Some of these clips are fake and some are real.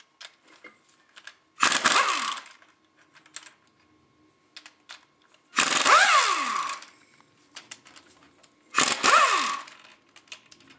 real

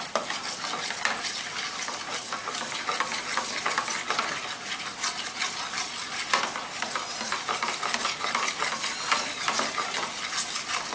real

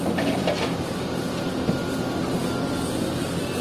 real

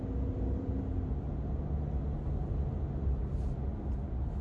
real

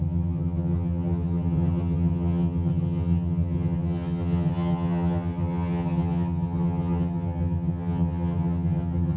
fake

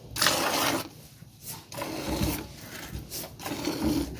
real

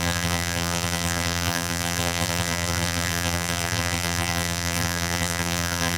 fake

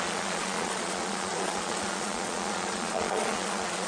fake